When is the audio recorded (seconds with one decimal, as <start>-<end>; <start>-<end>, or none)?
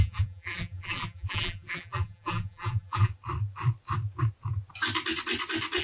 3.1-5.8